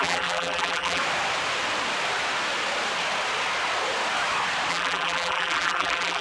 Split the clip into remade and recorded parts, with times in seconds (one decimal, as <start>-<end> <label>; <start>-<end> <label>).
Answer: 0.0-1.0 remade; 1.0-4.7 recorded; 4.7-6.2 remade